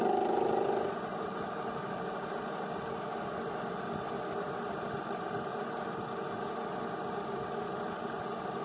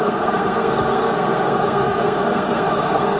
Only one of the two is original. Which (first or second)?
first